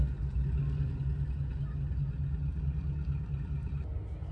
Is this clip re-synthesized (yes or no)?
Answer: no